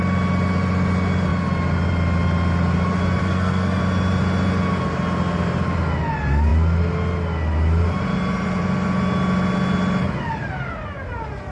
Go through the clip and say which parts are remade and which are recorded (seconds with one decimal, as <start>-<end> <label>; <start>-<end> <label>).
0.0-3.2 recorded; 3.2-3.8 remade; 3.8-11.5 recorded